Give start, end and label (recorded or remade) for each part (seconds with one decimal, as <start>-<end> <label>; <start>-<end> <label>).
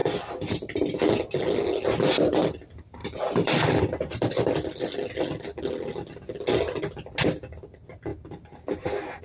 0.0-0.5 remade; 0.5-3.0 recorded; 3.0-5.7 remade; 5.7-9.2 recorded